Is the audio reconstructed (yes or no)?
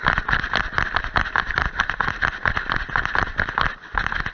no